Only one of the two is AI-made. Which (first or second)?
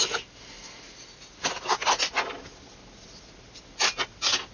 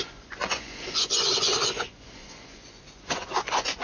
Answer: second